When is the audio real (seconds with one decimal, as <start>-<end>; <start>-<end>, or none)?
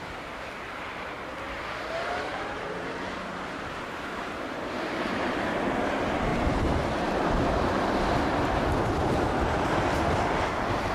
0.0-2.3; 5.5-6.3; 7.1-10.9